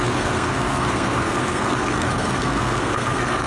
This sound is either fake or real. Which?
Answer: fake